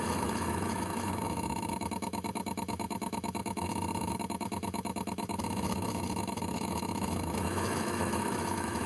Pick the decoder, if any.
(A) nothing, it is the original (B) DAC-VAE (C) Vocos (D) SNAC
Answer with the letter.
B